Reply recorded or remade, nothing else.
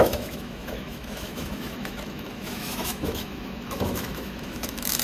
remade